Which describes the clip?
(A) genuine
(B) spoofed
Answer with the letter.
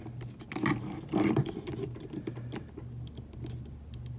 A